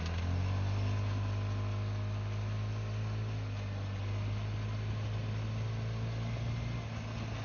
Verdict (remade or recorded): recorded